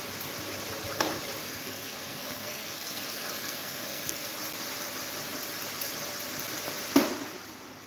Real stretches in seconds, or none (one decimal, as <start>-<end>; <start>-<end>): 0.0-1.4; 4.3-7.9